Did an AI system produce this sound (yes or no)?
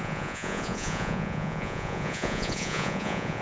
yes